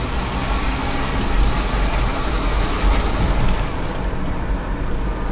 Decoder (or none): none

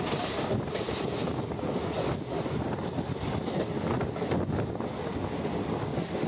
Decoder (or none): none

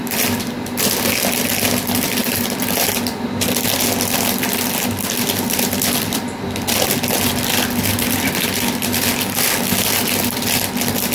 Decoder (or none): none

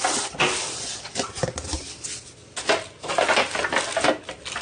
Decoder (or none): none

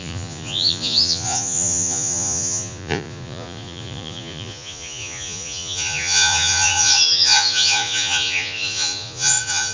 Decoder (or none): vocoder, Vocos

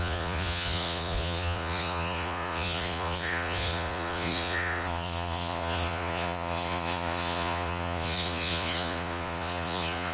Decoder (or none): vocoder, Vocos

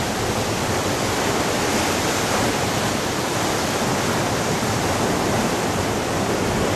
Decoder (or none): vocoder, BigVGAN v2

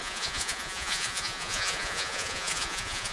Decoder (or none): vocoder, Vocos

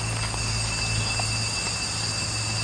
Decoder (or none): none